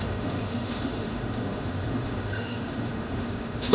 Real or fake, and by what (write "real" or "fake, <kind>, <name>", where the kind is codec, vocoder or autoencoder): fake, autoencoder, DAC-VAE